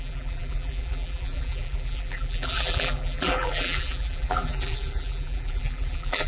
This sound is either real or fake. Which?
fake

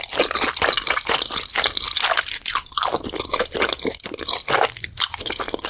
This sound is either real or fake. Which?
real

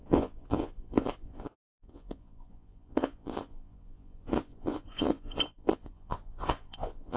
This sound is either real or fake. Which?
fake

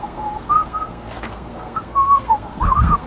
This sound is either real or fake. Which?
fake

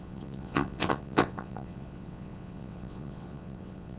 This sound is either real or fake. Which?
fake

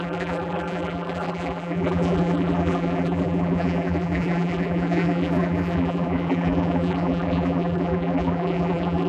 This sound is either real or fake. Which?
fake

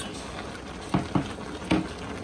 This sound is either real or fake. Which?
real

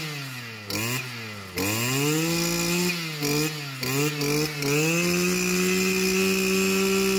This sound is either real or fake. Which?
real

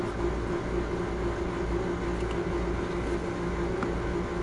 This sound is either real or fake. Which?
real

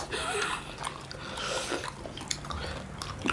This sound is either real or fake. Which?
real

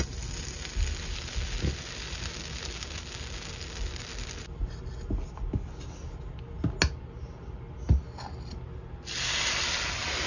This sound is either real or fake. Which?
real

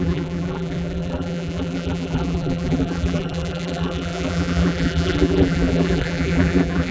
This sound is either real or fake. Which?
fake